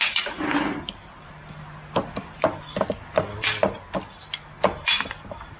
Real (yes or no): yes